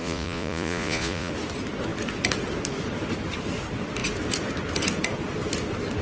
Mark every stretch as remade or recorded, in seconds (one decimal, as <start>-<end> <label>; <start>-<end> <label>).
0.0-1.3 remade; 1.3-6.0 recorded